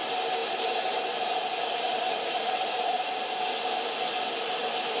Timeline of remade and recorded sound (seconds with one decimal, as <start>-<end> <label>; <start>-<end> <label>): 0.0-0.4 recorded; 0.4-3.4 remade; 3.4-5.0 recorded

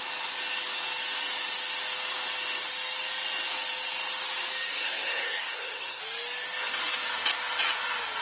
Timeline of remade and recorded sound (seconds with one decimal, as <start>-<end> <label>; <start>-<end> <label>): 0.0-4.7 recorded; 4.7-6.0 remade; 6.0-8.2 recorded

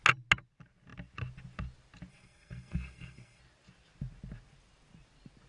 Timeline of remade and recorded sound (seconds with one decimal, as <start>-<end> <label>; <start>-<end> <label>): 0.0-2.1 recorded; 2.1-3.4 remade; 3.4-5.5 recorded

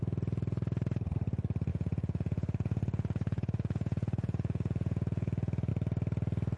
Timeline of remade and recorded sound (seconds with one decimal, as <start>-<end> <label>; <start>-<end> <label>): 0.0-1.7 recorded; 1.7-5.7 remade; 5.7-6.6 recorded

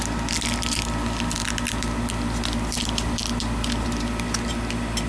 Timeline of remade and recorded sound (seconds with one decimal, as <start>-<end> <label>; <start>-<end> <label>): 0.0-1.4 recorded; 1.4-4.5 remade; 4.5-5.1 recorded

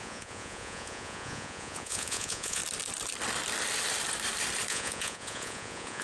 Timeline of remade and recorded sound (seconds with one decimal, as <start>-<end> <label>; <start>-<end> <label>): 0.0-2.6 remade; 2.6-4.7 recorded; 4.7-6.0 remade

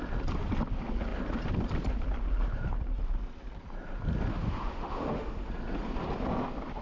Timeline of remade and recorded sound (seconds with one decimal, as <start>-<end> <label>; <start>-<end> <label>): 0.0-4.3 recorded; 4.3-5.5 remade; 5.5-6.8 recorded